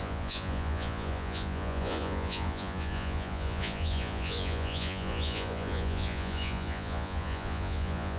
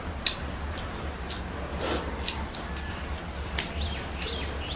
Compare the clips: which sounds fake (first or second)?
first